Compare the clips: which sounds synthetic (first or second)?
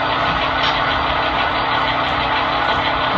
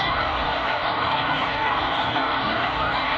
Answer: second